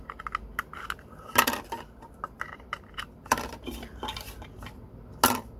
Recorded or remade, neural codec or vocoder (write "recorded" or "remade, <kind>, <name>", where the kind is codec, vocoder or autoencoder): recorded